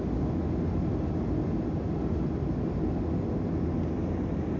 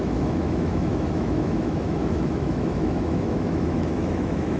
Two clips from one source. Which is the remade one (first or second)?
second